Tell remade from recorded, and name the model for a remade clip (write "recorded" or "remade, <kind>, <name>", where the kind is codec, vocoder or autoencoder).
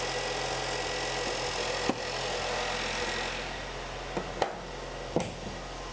recorded